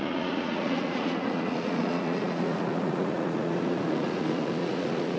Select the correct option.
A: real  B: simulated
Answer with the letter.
B